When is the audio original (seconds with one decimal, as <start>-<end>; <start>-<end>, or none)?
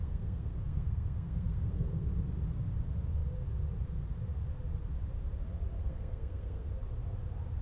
2.1-5.8; 6.7-7.6